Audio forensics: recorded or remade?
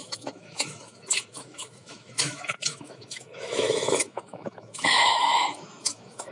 remade